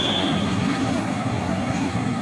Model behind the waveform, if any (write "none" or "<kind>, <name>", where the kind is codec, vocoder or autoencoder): codec, SNAC